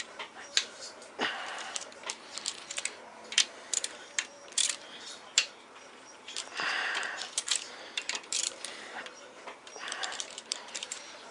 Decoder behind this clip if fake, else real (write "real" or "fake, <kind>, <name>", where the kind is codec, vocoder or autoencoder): fake, vocoder, BigVGAN v2